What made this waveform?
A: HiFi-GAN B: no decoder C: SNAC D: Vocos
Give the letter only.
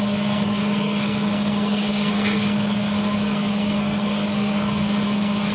C